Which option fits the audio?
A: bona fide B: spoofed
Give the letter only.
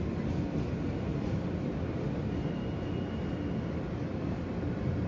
A